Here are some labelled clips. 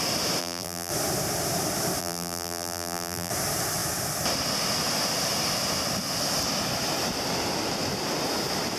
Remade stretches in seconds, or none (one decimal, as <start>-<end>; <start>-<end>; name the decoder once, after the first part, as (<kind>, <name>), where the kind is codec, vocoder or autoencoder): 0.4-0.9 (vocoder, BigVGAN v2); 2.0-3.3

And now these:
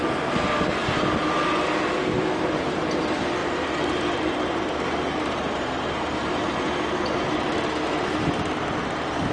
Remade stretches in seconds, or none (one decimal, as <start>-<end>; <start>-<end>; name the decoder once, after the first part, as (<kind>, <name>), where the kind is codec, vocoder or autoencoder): 3.4-6.3 (vocoder, BigVGAN v2)

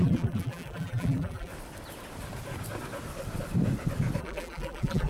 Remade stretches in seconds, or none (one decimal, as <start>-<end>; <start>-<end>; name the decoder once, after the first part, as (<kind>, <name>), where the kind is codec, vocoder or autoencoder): 0.0-1.5 (vocoder, BigVGAN v2); 4.2-5.1